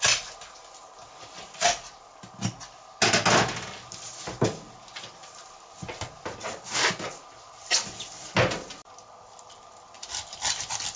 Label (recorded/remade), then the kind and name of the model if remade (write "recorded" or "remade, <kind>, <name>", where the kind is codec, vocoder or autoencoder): recorded